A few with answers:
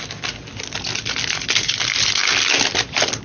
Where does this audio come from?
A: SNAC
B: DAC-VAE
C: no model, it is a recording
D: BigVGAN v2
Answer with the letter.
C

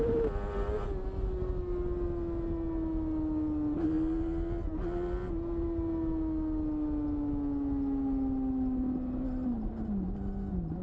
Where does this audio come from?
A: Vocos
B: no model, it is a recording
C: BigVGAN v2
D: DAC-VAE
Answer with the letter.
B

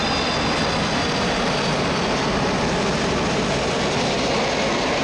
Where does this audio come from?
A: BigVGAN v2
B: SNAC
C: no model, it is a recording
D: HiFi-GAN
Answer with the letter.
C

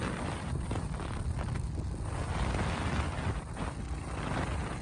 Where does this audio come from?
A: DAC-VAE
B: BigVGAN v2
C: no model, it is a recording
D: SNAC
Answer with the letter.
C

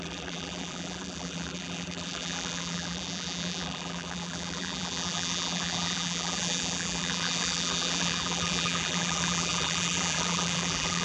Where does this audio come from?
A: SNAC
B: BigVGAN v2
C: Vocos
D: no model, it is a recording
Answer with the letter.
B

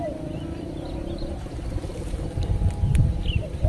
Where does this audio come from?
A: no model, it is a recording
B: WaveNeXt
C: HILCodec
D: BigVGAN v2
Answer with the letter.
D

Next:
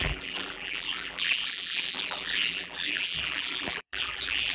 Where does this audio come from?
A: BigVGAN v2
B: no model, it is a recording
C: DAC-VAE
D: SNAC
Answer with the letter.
A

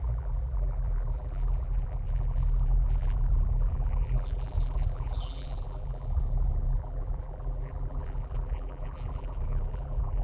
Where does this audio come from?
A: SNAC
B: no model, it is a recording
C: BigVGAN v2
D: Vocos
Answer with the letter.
C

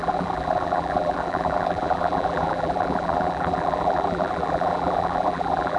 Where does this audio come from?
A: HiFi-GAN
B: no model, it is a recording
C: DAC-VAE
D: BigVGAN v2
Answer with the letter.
D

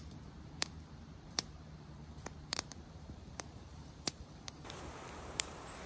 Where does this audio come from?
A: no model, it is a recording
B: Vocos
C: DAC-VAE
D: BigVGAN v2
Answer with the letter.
D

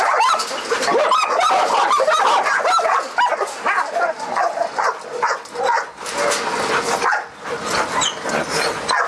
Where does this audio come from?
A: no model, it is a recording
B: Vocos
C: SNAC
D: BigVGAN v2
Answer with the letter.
A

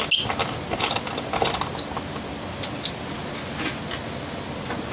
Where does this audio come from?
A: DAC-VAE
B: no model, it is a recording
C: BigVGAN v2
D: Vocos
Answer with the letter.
B